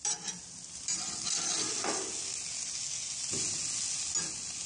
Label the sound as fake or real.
real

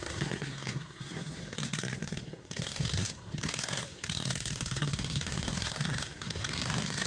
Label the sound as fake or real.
fake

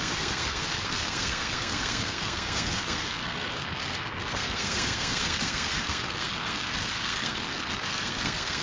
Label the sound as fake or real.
fake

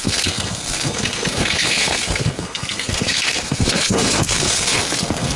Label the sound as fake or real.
fake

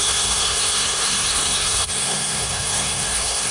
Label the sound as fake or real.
fake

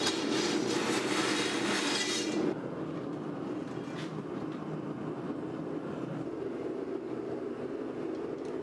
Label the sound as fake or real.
real